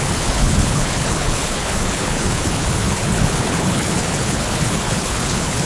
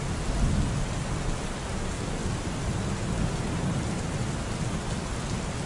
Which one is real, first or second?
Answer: second